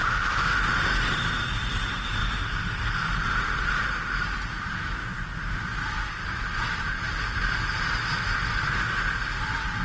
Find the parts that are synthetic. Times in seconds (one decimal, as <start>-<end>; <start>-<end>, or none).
none